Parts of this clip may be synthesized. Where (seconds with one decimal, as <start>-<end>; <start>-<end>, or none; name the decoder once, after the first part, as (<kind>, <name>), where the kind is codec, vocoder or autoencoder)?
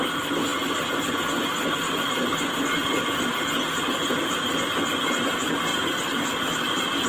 5.7-6.6 (vocoder, BigVGAN v2)